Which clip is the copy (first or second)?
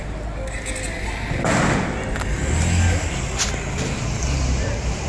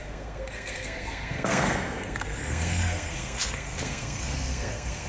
second